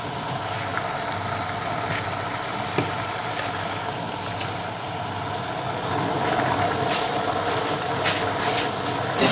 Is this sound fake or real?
real